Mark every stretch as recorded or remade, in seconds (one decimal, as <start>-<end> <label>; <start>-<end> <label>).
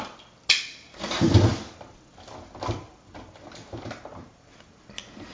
0.0-5.3 recorded